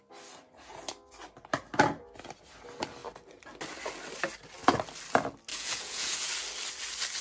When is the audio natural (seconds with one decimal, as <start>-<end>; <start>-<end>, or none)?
0.0-5.5; 6.3-7.2